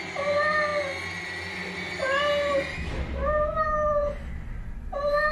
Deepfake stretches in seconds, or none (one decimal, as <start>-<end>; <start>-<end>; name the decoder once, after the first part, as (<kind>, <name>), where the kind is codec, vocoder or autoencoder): none